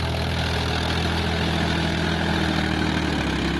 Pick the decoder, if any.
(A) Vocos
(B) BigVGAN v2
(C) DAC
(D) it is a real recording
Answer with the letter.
D